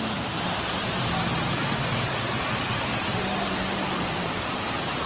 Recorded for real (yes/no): yes